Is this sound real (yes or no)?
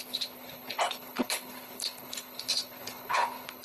no